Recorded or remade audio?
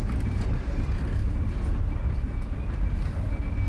recorded